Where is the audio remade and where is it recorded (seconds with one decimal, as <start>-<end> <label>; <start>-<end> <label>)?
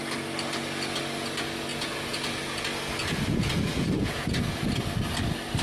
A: 0.0-1.7 recorded; 1.7-2.6 remade; 2.6-3.0 recorded; 3.0-4.6 remade; 4.6-5.6 recorded